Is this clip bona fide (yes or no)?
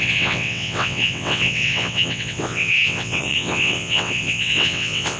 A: no